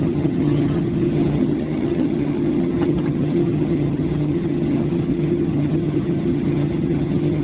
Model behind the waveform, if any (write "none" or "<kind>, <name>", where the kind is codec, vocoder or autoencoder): vocoder, HiFi-GAN